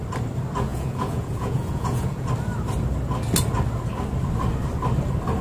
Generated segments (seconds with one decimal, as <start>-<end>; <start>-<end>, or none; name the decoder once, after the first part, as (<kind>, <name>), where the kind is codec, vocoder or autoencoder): 0.7-2.3 (vocoder, Vocos)